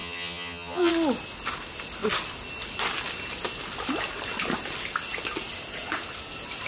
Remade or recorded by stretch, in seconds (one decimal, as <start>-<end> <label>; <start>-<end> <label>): 0.0-0.9 remade; 0.9-6.7 recorded